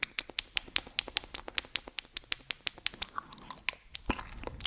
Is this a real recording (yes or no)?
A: yes